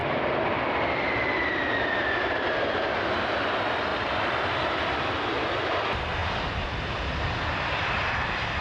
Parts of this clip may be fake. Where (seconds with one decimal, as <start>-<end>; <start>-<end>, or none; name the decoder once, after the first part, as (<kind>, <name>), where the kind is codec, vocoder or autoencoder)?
3.9-5.1 (vocoder, BigVGAN v2); 6.2-8.6